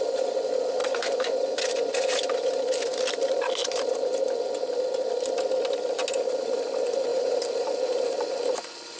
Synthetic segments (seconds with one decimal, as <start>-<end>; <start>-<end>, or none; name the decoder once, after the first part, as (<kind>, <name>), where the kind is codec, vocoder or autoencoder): 0.8-1.6 (vocoder, BigVGAN v2); 7.1-7.7